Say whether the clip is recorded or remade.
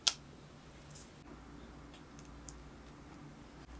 recorded